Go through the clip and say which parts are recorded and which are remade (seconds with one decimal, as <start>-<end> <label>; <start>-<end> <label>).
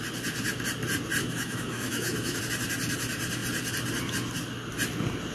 0.0-1.2 recorded; 1.2-2.4 remade; 2.4-5.3 recorded